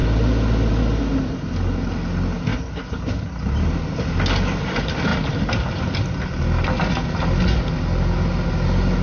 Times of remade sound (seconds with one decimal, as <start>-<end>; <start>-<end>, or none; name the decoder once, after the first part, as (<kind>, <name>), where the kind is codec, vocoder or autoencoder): none